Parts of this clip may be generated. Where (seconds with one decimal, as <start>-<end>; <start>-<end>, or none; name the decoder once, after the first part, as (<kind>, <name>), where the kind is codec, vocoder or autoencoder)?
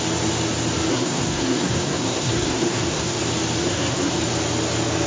0.9-3.2 (codec, SNAC); 3.6-4.1